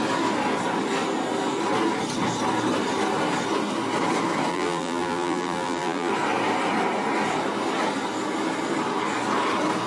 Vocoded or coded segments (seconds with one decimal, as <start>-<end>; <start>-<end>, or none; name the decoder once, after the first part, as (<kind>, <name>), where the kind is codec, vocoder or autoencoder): 4.5-6.1 (vocoder, BigVGAN v2)